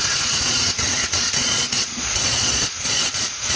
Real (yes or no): no